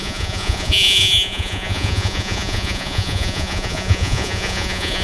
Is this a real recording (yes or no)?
no